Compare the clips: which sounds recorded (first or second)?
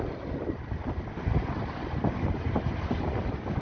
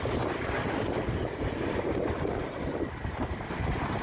first